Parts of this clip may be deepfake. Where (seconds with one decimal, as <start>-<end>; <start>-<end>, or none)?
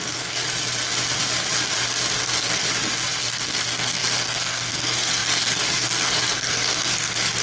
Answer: 0.0-0.4; 2.2-2.6; 3.2-7.4